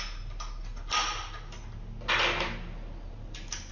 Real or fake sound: real